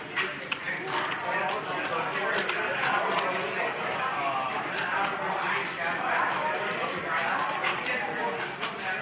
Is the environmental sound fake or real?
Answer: fake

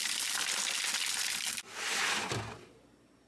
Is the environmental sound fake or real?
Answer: real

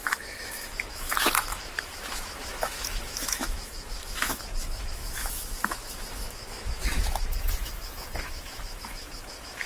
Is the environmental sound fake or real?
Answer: fake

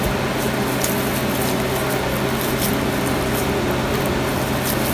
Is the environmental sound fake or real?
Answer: real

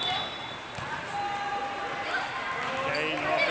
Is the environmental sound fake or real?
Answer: real